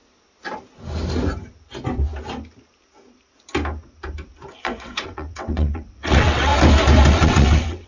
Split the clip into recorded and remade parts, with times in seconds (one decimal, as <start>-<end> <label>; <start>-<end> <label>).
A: 0.0-4.6 recorded; 4.6-6.5 remade; 6.5-7.1 recorded; 7.1-7.9 remade